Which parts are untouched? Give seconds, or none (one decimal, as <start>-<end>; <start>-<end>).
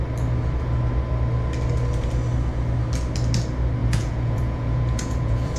0.0-3.8